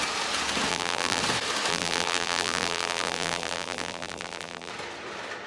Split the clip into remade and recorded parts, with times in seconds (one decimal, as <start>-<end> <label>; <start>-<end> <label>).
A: 0.0-0.7 recorded; 0.7-1.2 remade; 1.2-1.7 recorded; 1.7-4.7 remade; 4.7-5.5 recorded